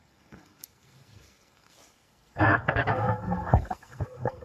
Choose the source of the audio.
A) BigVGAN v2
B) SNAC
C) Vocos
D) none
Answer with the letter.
B